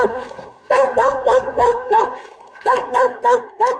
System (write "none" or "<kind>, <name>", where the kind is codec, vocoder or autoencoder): codec, SNAC